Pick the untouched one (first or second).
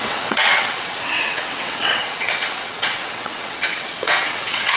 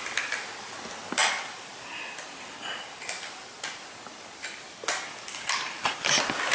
second